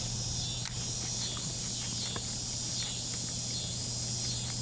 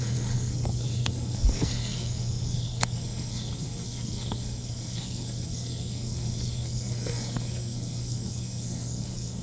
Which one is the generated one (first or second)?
second